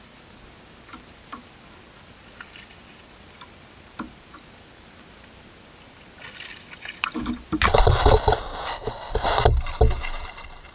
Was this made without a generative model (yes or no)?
yes